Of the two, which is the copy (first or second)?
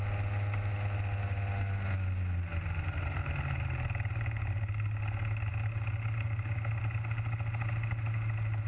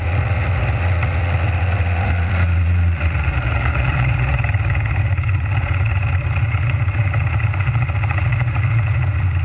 second